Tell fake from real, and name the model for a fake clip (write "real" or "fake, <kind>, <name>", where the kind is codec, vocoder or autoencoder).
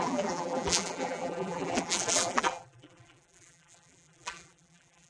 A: fake, vocoder, BigVGAN v2